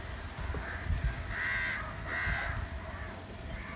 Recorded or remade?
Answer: recorded